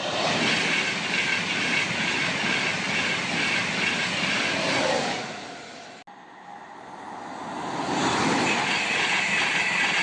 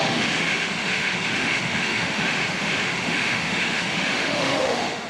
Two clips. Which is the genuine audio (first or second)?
first